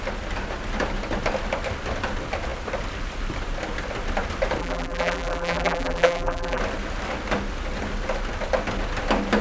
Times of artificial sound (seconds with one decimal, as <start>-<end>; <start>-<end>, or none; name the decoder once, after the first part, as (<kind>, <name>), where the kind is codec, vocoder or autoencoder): 4.6-6.6 (vocoder, BigVGAN v2)